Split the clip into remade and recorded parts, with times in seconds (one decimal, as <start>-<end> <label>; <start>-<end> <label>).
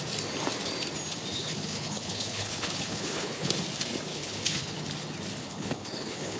0.0-1.3 recorded; 1.3-3.5 remade; 3.5-4.1 recorded; 4.1-4.8 remade; 4.8-5.4 recorded; 5.4-6.4 remade